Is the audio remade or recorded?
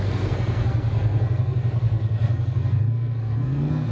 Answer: remade